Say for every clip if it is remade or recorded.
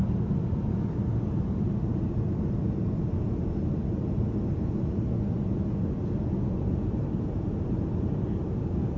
recorded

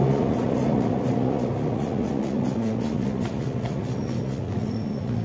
remade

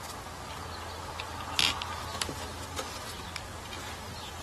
recorded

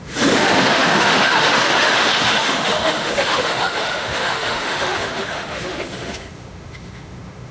remade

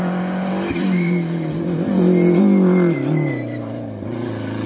recorded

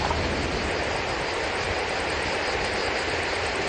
recorded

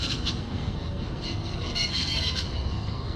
remade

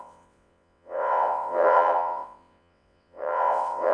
remade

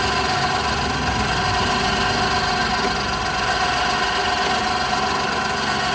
recorded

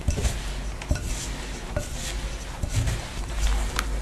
recorded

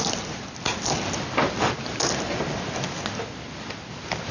recorded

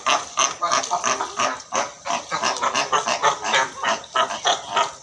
recorded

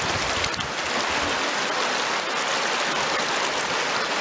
recorded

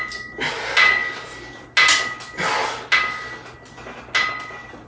recorded